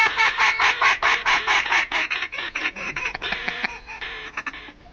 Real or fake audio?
real